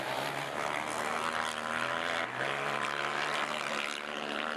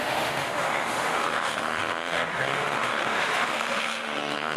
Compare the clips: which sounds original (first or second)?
first